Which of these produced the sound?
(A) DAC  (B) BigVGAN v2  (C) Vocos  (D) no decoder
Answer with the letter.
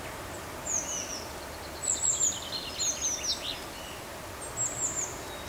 D